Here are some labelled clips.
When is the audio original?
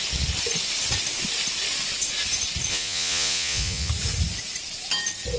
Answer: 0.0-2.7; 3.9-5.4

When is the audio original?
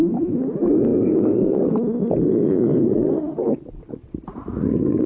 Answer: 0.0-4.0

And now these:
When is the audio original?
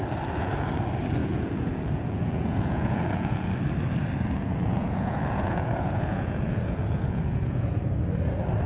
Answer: 0.0-1.2; 3.5-4.4; 7.8-8.7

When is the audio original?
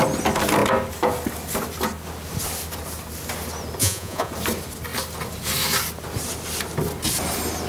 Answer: 0.0-3.8; 4.3-7.7